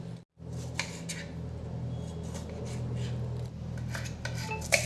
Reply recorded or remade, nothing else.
recorded